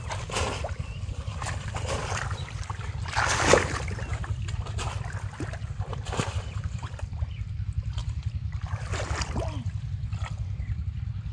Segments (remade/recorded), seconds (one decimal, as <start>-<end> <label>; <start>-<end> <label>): 0.0-2.0 recorded; 2.0-3.5 remade; 3.5-4.1 recorded; 4.1-4.7 remade; 4.7-5.9 recorded; 5.9-7.5 remade; 7.5-8.0 recorded; 8.0-9.3 remade; 9.3-11.3 recorded